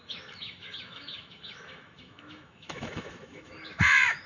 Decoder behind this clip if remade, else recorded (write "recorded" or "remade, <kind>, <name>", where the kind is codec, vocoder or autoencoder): remade, autoencoder, DAC-VAE